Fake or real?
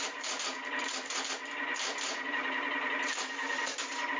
real